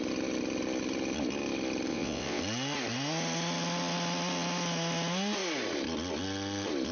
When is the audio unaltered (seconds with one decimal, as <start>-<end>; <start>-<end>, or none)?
0.0-1.9; 2.4-6.9